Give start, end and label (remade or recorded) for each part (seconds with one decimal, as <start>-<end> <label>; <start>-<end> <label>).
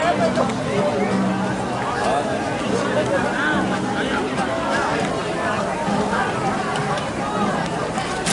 0.0-8.3 recorded